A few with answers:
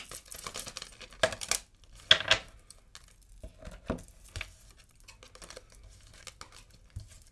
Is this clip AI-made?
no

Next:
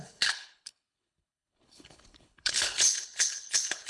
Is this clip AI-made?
yes